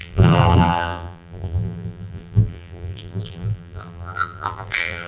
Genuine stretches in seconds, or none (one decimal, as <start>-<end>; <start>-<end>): none